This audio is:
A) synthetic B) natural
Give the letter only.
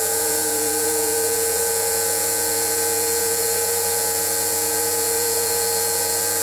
A